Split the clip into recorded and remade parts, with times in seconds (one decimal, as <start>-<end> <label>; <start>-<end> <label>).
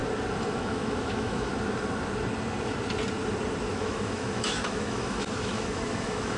0.0-0.5 recorded; 0.5-1.5 remade; 1.5-3.7 recorded; 3.7-6.4 remade